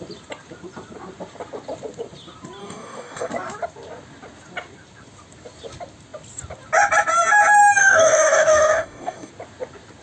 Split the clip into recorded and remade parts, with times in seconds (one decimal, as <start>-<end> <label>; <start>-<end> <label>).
0.0-2.6 recorded; 2.6-3.3 remade; 3.3-7.8 recorded; 7.8-9.3 remade; 9.3-10.0 recorded